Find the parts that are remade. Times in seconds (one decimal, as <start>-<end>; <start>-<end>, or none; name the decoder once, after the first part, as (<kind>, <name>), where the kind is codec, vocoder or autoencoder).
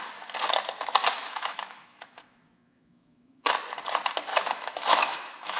1.0-3.5 (autoencoder, DAC-VAE); 4.3-5.6